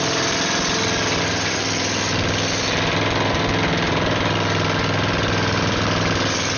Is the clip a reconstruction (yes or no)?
no